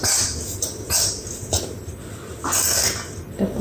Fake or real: real